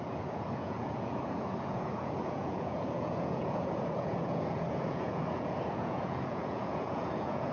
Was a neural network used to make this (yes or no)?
yes